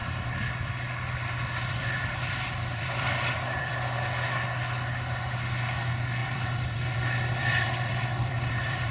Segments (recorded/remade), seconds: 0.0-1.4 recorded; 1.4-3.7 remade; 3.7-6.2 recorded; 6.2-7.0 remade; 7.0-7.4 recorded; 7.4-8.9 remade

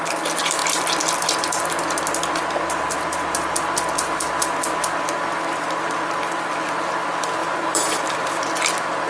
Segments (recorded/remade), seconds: 0.0-7.4 recorded; 7.4-8.4 remade; 8.4-9.1 recorded

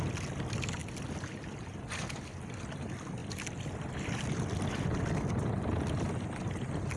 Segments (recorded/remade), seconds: 0.0-3.2 recorded; 3.2-5.0 remade; 5.0-7.0 recorded

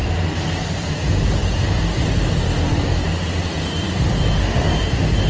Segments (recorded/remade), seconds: 0.0-1.4 remade; 1.4-3.5 recorded; 3.5-5.3 remade

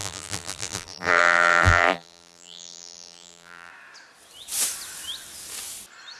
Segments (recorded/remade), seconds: 0.0-3.7 remade; 3.7-6.2 recorded

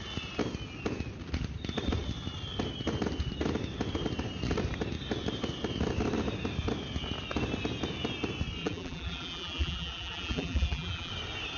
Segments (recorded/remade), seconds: 0.0-8.6 recorded; 8.6-11.1 remade; 11.1-11.6 recorded

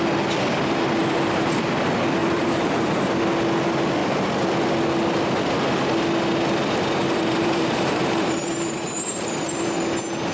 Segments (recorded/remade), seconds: 0.0-1.0 recorded; 1.0-1.6 remade; 1.6-2.2 recorded; 2.2-3.1 remade; 3.1-7.0 recorded; 7.0-9.8 remade; 9.8-10.3 recorded

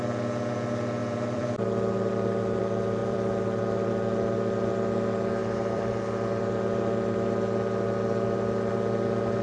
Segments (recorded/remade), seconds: 0.0-1.0 recorded; 1.0-2.6 remade; 2.6-3.0 recorded; 3.0-3.6 remade; 3.6-5.4 recorded; 5.4-5.9 remade; 5.9-9.4 recorded